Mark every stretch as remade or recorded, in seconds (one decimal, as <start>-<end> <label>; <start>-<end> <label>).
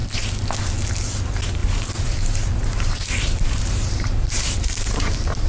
0.0-1.2 recorded; 1.2-5.5 remade